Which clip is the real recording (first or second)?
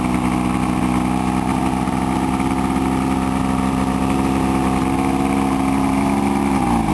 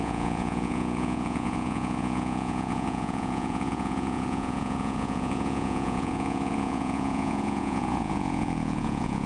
first